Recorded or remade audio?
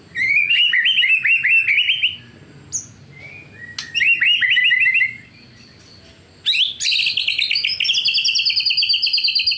recorded